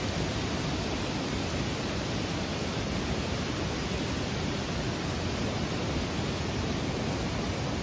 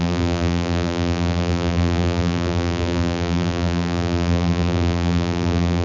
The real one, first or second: first